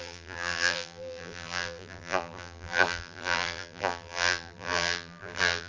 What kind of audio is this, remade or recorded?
remade